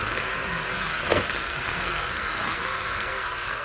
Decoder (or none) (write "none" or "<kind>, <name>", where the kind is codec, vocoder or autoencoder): codec, SNAC